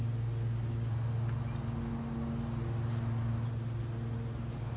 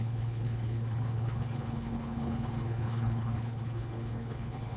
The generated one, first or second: second